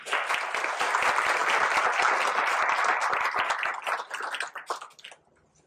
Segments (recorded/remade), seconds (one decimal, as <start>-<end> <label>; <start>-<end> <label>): 0.0-5.7 recorded